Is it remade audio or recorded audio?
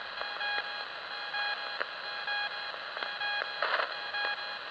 recorded